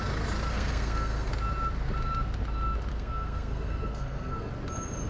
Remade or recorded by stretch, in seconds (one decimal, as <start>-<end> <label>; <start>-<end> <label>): 0.0-0.5 recorded; 0.5-1.3 remade; 1.3-2.9 recorded; 2.9-4.5 remade; 4.5-5.1 recorded